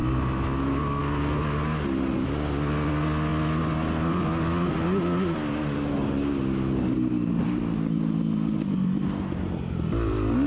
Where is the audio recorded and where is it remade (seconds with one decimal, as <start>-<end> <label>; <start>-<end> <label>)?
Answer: 0.0-10.5 recorded